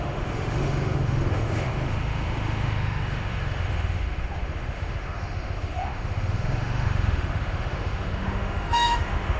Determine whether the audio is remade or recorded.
remade